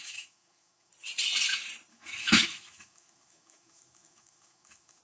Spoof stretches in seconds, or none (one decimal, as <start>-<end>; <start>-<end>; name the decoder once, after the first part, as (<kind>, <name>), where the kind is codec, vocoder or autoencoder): 0.0-0.9 (autoencoder, DAC-VAE); 1.9-5.0